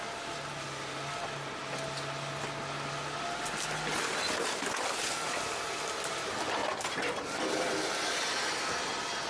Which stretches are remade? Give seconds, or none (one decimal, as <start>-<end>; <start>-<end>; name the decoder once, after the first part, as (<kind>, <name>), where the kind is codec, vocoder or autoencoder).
none